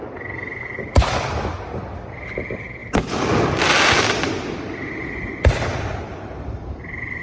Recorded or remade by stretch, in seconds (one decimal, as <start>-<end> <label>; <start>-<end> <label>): 0.0-6.1 recorded; 6.1-6.8 remade; 6.8-7.2 recorded